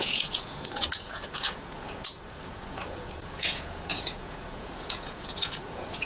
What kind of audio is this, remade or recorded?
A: remade